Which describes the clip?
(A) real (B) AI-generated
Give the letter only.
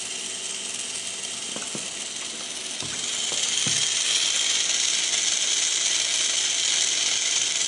A